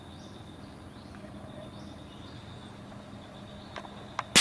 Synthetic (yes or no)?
no